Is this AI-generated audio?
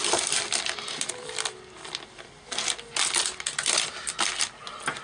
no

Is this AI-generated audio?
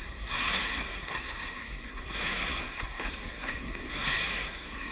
yes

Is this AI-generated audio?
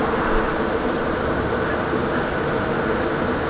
no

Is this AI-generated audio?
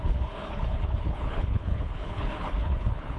yes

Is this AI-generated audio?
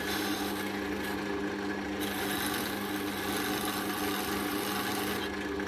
no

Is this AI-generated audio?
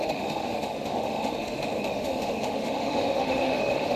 yes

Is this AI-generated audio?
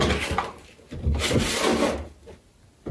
no